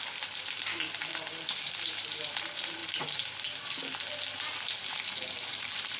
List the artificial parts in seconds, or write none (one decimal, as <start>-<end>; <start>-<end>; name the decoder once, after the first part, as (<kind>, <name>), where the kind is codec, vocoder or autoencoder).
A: 0.0-1.1 (vocoder, BigVGAN v2); 1.7-2.8; 4.5-6.0